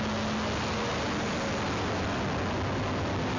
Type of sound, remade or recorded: recorded